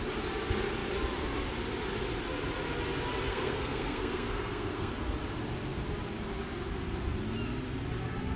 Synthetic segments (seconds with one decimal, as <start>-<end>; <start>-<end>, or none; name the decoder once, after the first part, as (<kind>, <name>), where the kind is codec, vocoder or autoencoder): 3.3-4.9 (codec, SNAC)